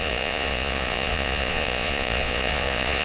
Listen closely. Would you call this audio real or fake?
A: fake